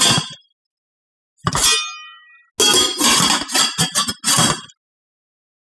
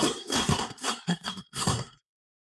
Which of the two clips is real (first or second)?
first